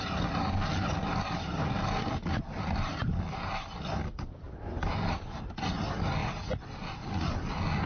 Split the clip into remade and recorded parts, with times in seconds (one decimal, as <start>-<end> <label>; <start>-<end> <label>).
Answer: 0.0-7.9 recorded